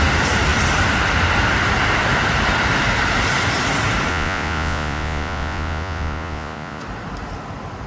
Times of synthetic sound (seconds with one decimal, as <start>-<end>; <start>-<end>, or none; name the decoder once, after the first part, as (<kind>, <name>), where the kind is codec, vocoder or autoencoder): 4.1-6.8 (vocoder, Vocos)